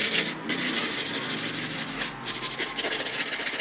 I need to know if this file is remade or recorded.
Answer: recorded